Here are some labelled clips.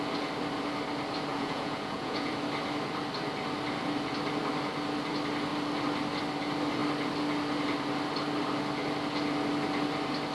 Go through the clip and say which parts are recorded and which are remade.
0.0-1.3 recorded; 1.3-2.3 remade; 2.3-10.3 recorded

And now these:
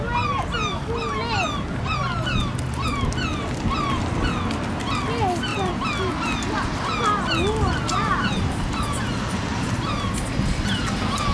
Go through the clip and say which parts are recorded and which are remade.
0.0-11.3 recorded

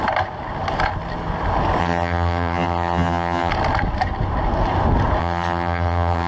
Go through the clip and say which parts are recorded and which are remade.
0.0-1.8 recorded; 1.8-3.5 remade; 3.5-5.2 recorded; 5.2-6.3 remade

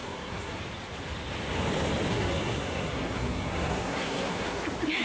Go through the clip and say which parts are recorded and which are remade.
0.0-0.6 remade; 0.6-2.1 recorded; 2.1-4.6 remade; 4.6-5.0 recorded

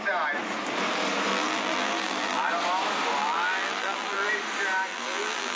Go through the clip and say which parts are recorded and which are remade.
0.0-1.3 recorded; 1.3-2.5 remade; 2.5-3.2 recorded; 3.2-4.3 remade; 4.3-4.9 recorded; 4.9-5.6 remade

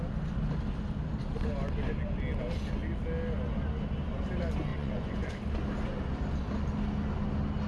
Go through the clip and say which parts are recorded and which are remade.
0.0-4.7 recorded; 4.7-5.3 remade; 5.3-7.7 recorded

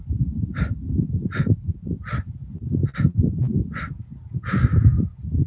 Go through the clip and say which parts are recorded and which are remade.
0.0-5.5 recorded

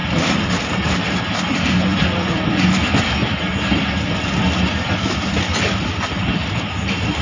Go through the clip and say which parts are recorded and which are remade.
0.0-0.9 remade; 0.9-1.9 recorded; 1.9-2.8 remade; 2.8-4.4 recorded; 4.4-6.1 remade; 6.1-7.2 recorded